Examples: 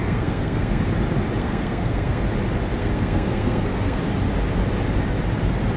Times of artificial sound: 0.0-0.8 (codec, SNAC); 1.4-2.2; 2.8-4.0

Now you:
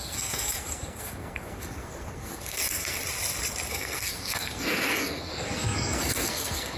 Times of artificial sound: 0.0-3.0 (codec, SNAC); 3.7-6.8

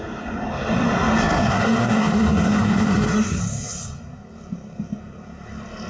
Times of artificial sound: 1.2-3.4 (codec, SNAC)

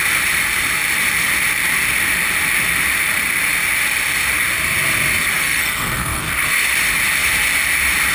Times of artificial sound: 5.4-6.2 (codec, SNAC)

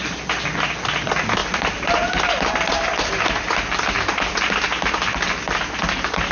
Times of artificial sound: none

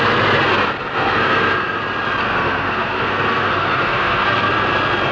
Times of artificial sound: 0.9-1.8 (codec, SNAC); 2.2-4.5

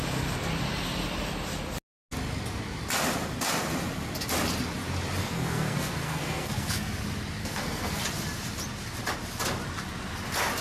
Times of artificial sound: 5.2-6.9 (codec, SNAC); 7.4-8.0

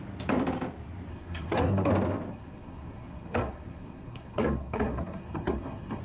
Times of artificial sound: 1.1-1.9 (codec, SNAC); 2.3-6.0